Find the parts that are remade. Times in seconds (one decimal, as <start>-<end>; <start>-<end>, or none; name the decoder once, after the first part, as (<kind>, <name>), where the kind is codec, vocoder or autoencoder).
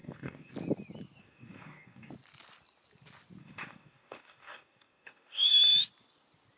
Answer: 0.0-0.5 (codec, DAC); 1.2-2.1; 3.4-5.5